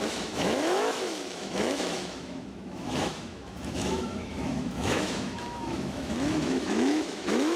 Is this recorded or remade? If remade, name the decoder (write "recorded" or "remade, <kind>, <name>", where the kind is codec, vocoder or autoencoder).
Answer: remade, autoencoder, DAC-VAE